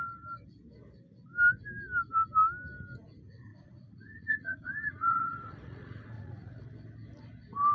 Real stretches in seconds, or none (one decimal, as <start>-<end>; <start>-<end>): 0.0-3.5; 6.6-7.7